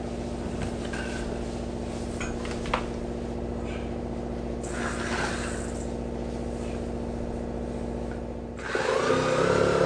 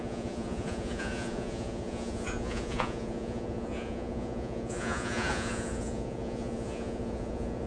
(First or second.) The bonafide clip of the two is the first